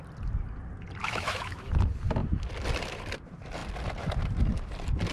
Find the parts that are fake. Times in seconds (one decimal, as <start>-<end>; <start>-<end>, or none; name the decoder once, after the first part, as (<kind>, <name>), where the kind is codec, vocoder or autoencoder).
1.0-1.7 (autoencoder, DAC-VAE)